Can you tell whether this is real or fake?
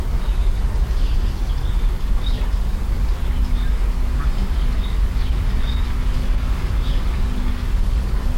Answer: fake